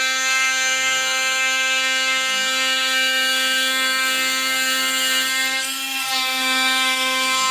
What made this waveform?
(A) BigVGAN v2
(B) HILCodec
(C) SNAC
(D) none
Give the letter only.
C